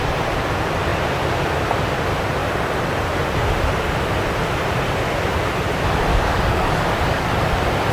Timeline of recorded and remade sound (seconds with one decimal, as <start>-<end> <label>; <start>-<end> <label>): 0.0-6.1 recorded; 6.1-7.3 remade; 7.3-7.9 recorded